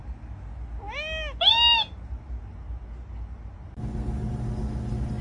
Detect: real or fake real